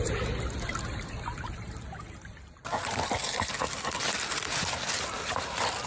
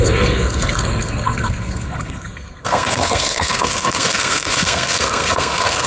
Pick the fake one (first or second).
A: second